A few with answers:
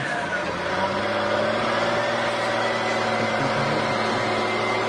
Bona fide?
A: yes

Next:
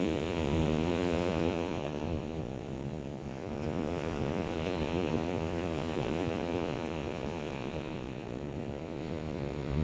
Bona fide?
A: no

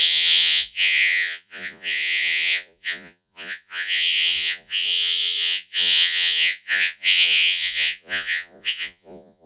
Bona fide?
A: no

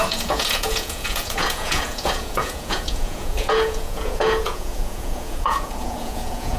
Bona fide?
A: no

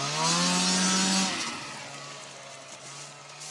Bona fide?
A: yes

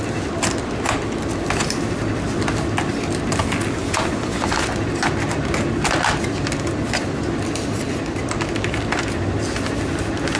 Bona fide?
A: yes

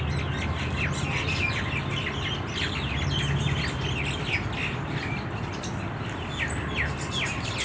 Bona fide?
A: yes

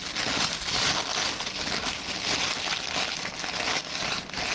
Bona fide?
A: yes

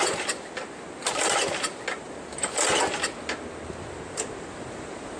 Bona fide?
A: yes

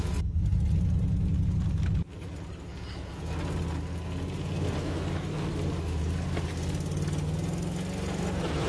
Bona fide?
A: yes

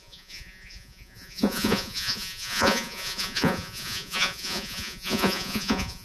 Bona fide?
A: no